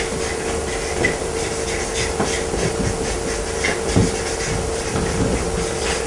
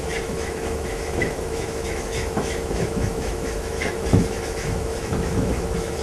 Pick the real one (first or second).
first